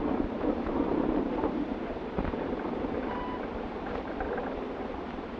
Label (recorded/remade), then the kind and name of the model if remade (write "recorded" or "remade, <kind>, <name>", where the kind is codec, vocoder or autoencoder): remade, vocoder, BigVGAN v2